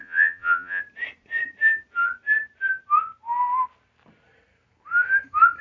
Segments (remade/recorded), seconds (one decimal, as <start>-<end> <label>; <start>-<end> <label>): 0.0-0.8 remade; 0.8-5.6 recorded

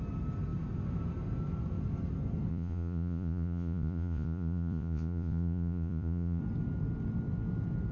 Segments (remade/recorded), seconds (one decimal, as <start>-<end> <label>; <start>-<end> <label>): 0.0-2.5 recorded; 2.5-6.4 remade; 6.4-7.9 recorded

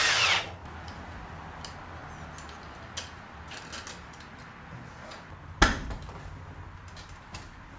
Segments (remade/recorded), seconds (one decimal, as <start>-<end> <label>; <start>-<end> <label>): 0.0-0.6 recorded; 0.6-1.3 remade; 1.3-7.8 recorded

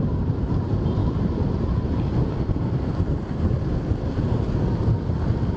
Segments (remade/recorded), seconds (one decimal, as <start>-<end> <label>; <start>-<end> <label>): 0.0-5.6 recorded